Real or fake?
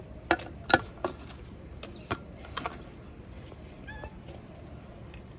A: real